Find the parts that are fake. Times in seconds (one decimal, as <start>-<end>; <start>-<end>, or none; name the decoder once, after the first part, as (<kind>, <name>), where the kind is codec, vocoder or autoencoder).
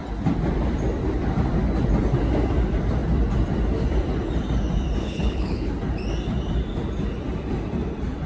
5.0-5.7 (codec, HILCodec)